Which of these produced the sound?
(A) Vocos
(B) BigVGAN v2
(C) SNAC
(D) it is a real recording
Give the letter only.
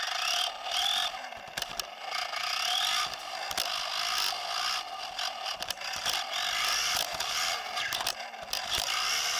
D